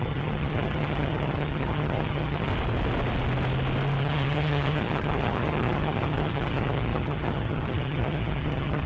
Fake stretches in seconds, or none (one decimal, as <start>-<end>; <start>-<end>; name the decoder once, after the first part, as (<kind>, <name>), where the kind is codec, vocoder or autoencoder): 0.0-2.5 (vocoder, HiFi-GAN); 4.0-8.9